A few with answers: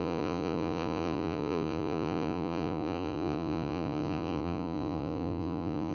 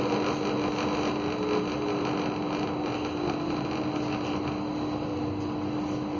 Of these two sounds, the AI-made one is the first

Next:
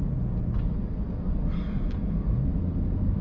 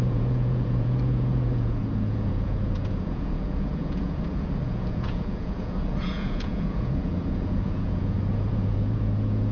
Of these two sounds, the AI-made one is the second